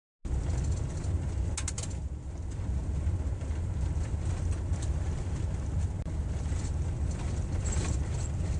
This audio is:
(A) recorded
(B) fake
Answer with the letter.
A